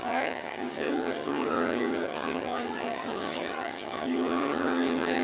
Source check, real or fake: fake